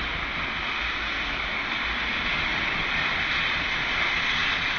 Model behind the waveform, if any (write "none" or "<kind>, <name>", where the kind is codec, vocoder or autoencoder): none